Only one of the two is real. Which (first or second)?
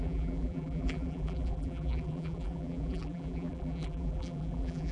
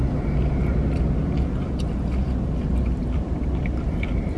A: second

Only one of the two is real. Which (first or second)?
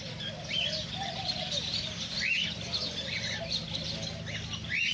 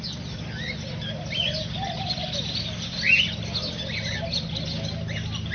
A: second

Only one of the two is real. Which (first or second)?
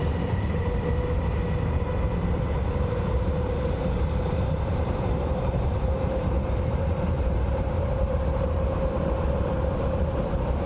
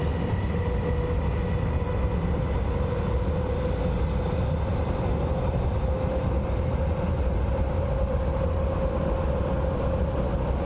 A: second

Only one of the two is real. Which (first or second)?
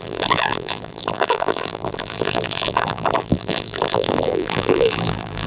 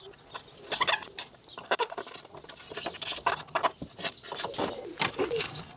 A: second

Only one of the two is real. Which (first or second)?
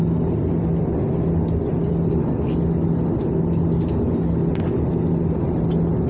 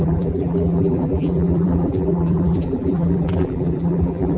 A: first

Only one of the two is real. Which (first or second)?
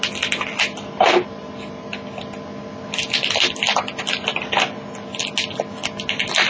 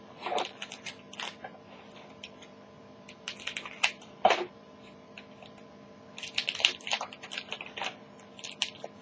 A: first